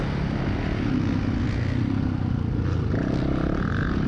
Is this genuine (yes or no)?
yes